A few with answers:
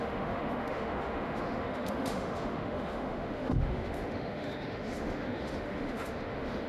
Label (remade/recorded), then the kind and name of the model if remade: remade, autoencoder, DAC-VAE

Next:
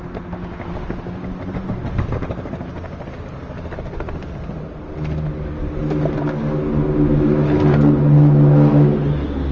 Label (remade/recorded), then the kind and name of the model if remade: recorded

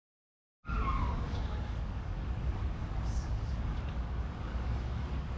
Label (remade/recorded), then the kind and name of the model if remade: remade, codec, DAC